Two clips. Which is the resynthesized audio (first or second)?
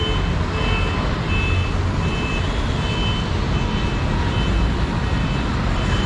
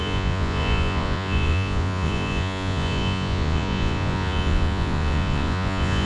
second